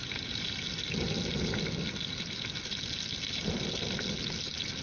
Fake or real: real